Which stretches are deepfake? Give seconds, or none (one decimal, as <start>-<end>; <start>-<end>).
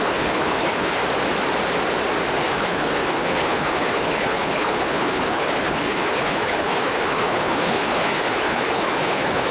0.0-1.0; 2.4-9.5